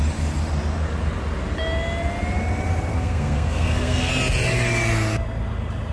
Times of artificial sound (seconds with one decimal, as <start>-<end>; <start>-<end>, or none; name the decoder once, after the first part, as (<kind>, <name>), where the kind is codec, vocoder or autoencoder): 2.9-4.1 (codec, SNAC)